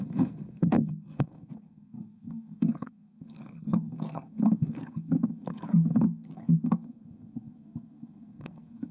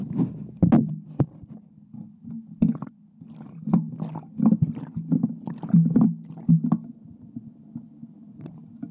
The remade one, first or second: first